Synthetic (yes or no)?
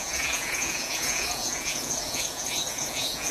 yes